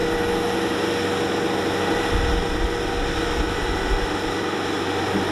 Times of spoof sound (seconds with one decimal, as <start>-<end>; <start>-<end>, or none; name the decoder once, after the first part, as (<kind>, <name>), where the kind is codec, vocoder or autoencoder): none